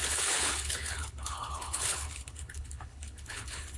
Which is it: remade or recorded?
remade